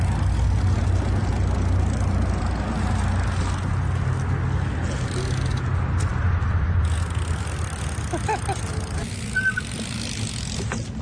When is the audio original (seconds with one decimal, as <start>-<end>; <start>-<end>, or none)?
0.0-11.0